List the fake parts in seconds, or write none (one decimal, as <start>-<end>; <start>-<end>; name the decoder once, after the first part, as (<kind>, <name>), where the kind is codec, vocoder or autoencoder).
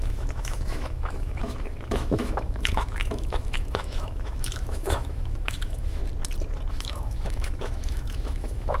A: 0.0-6.0 (autoencoder, DAC-VAE); 6.7-8.8